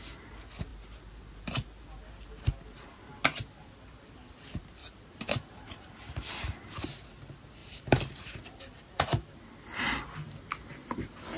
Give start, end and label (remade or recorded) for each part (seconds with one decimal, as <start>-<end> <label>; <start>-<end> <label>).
0.0-4.8 recorded; 4.8-6.3 remade; 6.3-7.6 recorded; 7.6-8.6 remade; 8.6-11.4 recorded